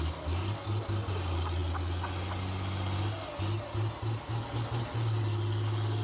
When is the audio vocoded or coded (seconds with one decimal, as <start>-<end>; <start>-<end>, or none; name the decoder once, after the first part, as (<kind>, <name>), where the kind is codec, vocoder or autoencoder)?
none

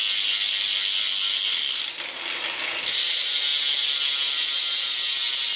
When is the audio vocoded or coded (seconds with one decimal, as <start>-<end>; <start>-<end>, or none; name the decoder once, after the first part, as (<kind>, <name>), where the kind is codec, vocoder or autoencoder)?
none

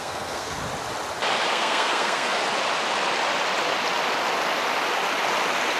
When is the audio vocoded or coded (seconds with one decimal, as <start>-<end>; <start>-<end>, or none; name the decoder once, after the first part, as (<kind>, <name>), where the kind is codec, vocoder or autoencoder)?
0.0-0.6 (codec, SNAC); 1.5-2.4

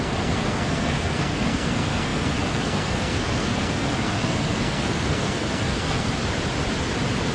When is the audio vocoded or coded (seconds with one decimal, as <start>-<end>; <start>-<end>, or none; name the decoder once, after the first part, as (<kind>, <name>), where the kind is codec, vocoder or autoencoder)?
0.0-6.2 (codec, SNAC)

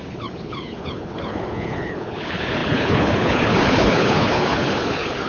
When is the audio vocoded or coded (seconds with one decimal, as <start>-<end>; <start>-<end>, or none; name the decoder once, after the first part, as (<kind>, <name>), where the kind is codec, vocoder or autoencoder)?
0.0-5.3 (codec, HILCodec)

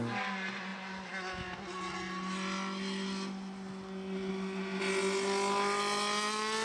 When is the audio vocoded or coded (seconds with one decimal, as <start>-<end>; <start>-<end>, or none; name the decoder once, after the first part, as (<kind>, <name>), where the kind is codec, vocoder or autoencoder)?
none

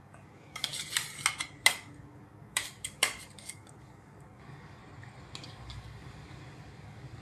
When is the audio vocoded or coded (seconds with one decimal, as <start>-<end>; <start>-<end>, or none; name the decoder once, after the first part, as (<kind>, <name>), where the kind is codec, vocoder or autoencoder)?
0.0-0.7 (codec, DAC); 1.7-4.8; 5.4-7.2